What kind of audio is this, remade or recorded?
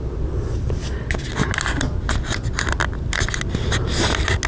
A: recorded